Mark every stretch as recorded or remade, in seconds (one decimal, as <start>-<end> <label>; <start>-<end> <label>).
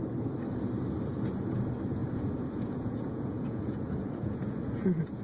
0.0-2.0 recorded; 2.0-5.2 remade